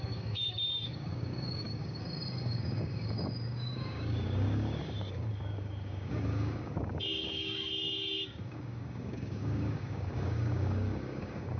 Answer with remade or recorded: remade